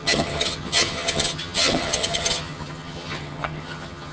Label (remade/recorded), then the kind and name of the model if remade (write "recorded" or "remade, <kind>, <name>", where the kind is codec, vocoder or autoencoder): remade, vocoder, HiFi-GAN